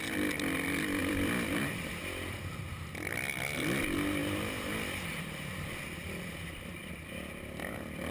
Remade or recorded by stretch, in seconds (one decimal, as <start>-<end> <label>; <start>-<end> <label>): 0.0-1.0 recorded; 1.0-2.0 remade; 2.0-4.2 recorded; 4.2-6.9 remade; 6.9-8.1 recorded